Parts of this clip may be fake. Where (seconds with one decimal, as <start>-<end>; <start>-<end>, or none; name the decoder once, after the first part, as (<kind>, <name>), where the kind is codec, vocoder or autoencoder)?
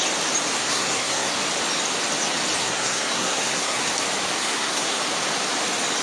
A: 0.6-1.3 (codec, SNAC); 2.6-3.9; 4.4-5.0